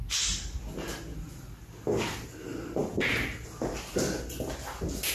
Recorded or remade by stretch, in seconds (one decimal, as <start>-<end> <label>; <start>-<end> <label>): 0.0-5.1 recorded